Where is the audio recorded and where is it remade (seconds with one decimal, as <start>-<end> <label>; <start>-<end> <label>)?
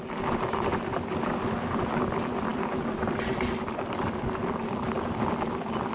0.0-5.9 recorded